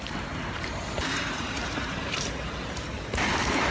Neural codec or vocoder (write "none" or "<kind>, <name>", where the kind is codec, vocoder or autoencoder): vocoder, BigVGAN v2